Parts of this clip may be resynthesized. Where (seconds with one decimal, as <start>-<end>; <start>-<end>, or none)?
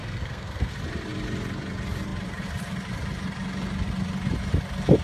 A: 0.0-0.7